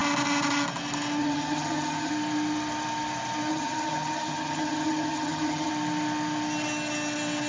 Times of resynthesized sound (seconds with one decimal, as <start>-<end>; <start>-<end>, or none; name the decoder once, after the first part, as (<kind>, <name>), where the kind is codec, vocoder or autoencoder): 1.2-2.1 (vocoder, HiFi-GAN); 3.5-5.7